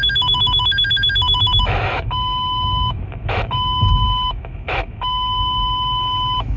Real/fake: fake